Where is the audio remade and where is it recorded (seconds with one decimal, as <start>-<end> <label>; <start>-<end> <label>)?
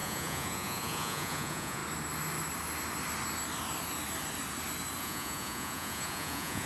0.0-1.8 remade; 1.8-5.0 recorded; 5.0-6.7 remade